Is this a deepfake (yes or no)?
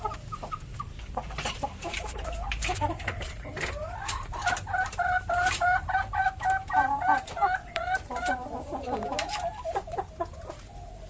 yes